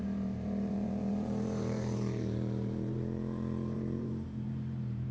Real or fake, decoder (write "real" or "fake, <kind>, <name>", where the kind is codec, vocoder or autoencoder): fake, vocoder, BigVGAN v2